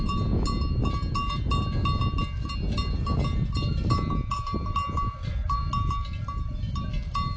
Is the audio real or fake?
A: real